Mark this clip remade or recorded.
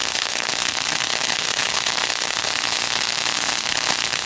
remade